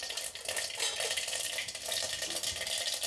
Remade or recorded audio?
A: recorded